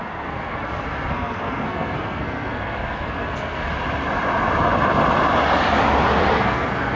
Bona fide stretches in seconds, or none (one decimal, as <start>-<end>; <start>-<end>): 3.7-6.3